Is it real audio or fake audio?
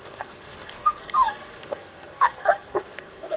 fake